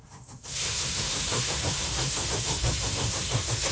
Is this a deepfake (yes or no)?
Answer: yes